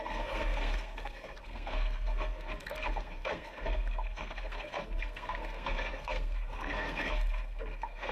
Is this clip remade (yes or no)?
yes